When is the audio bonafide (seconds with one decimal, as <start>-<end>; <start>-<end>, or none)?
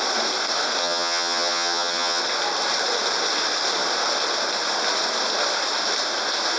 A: 0.0-0.8; 2.2-6.6